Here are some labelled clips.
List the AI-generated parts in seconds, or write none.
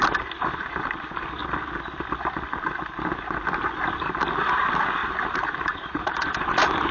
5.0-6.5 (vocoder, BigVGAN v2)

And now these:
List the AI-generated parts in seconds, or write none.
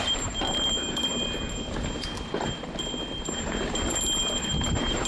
0.0-1.1 (vocoder, BigVGAN v2); 4.2-5.1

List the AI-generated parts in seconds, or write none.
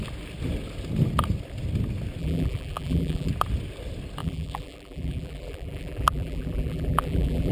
2.2-3.3 (vocoder, BigVGAN v2); 4.2-7.5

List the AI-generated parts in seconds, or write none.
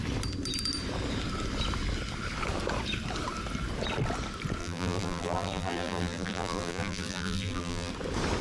4.6-7.9 (vocoder, BigVGAN v2)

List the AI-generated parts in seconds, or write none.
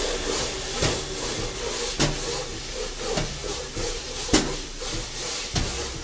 3.4-4.0 (vocoder, BigVGAN v2)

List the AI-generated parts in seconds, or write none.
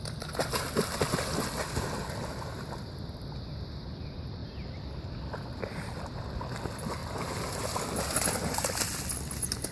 none